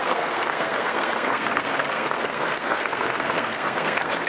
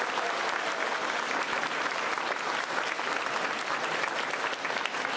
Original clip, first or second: second